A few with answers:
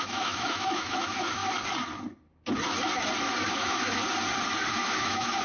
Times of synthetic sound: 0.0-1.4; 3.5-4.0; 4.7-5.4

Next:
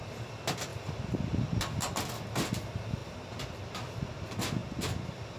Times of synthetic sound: 0.7-1.5; 3.0-3.7; 4.6-5.4

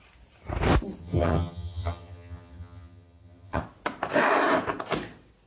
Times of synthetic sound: 1.0-3.6